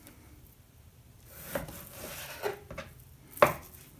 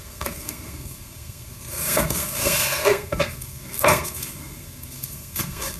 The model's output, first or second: second